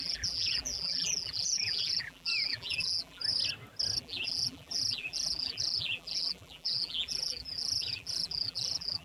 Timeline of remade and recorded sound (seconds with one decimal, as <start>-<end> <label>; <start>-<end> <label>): 0.0-3.2 remade; 3.2-4.0 recorded; 4.0-9.0 remade